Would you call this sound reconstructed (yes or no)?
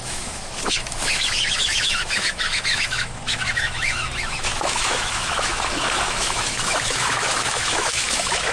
yes